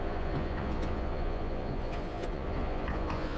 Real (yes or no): no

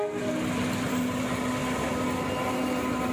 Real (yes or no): yes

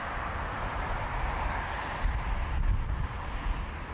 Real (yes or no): yes